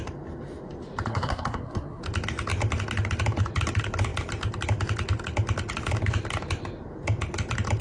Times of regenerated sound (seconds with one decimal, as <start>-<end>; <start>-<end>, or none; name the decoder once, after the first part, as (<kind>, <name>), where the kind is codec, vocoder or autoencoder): 1.1-2.0 (codec, SNAC)